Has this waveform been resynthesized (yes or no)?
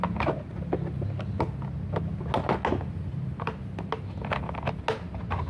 no